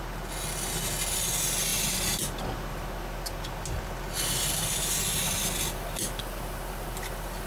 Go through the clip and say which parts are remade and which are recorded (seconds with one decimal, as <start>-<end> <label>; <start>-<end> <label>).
0.0-7.5 recorded